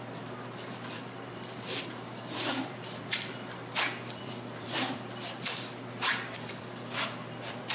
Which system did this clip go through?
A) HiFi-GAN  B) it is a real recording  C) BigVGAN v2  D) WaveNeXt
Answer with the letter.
C